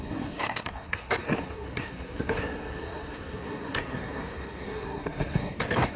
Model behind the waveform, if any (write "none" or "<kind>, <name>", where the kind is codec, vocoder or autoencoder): codec, SNAC